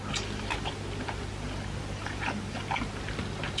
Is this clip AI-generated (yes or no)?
no